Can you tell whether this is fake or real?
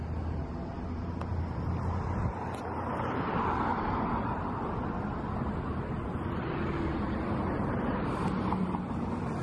real